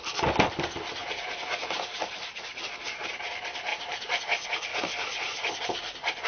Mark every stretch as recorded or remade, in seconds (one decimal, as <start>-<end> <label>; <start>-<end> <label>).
0.0-1.0 recorded; 1.0-3.1 remade; 3.1-3.7 recorded; 3.7-4.2 remade; 4.2-4.7 recorded; 4.7-5.5 remade; 5.5-6.3 recorded